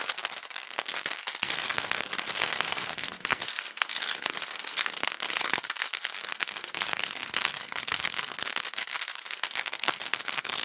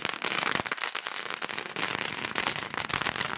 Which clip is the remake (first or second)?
first